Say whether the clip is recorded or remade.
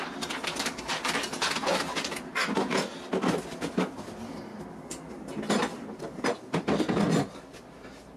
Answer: recorded